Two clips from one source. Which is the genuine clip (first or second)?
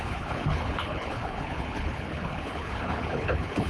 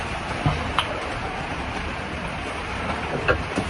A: second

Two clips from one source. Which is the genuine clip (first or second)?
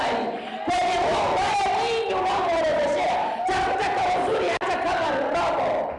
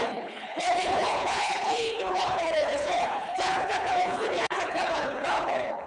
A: first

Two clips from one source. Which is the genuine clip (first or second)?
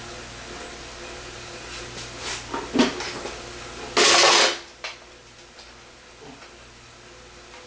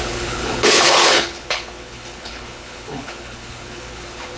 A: first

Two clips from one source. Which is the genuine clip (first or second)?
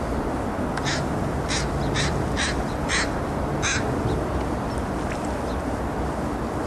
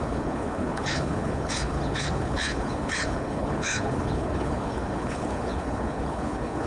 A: first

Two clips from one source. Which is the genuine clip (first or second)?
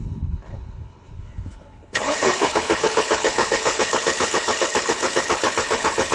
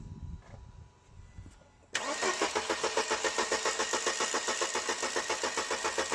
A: second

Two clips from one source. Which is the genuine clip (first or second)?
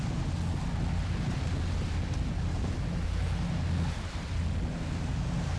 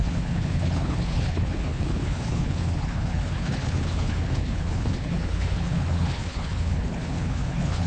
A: first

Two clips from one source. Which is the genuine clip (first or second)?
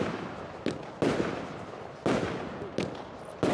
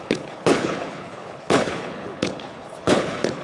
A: first